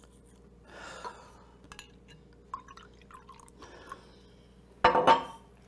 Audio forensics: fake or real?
real